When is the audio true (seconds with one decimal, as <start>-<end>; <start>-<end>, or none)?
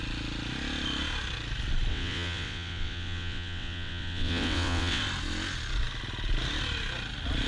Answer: 0.0-1.9; 5.0-7.5